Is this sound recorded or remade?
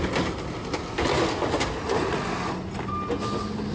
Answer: recorded